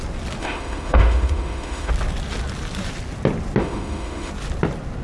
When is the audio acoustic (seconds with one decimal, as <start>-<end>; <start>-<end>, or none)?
0.0-0.4; 1.9-3.6; 4.3-5.0